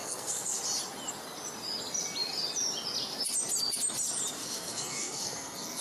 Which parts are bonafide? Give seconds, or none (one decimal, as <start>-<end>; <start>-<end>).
0.6-4.4

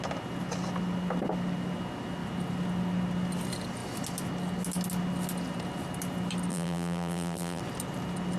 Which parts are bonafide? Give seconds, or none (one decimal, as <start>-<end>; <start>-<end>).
0.0-6.5; 7.6-8.4

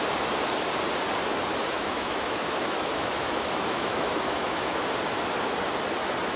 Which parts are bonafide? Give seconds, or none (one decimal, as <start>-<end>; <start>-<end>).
0.0-1.8; 4.8-6.4

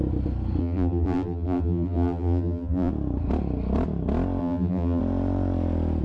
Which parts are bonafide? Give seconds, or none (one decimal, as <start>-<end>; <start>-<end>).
0.0-0.6; 2.9-4.4; 5.0-6.0

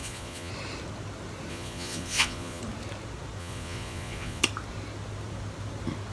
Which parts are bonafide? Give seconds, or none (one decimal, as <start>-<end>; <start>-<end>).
0.5-1.5; 2.6-3.4; 4.4-6.1

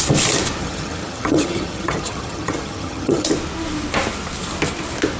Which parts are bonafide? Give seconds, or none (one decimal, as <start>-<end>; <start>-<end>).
0.0-0.6; 3.3-5.2